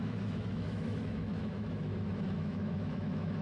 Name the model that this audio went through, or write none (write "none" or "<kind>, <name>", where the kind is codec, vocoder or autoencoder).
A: autoencoder, DAC-VAE